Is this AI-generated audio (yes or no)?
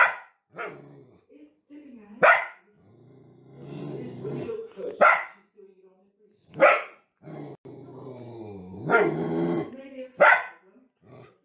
no